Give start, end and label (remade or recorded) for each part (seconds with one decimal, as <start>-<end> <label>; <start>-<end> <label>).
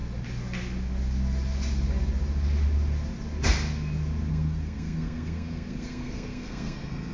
0.0-4.3 recorded; 4.3-7.1 remade